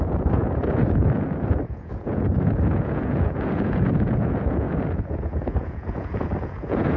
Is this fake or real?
fake